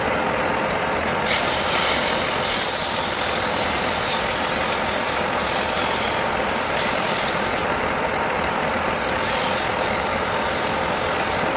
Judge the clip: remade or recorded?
recorded